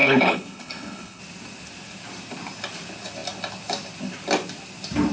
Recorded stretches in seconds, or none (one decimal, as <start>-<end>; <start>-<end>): 1.2-5.1